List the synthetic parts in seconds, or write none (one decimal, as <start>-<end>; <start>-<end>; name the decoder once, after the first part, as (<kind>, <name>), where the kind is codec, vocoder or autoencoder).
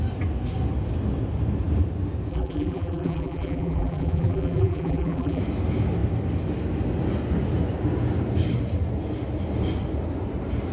2.3-5.4 (vocoder, BigVGAN v2)